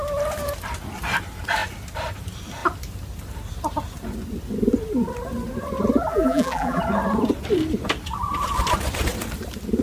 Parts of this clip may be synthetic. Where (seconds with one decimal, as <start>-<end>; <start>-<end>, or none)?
6.1-6.8